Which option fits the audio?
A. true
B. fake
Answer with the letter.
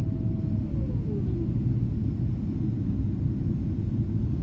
A